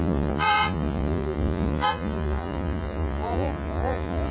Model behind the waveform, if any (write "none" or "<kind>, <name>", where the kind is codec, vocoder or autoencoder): vocoder, Vocos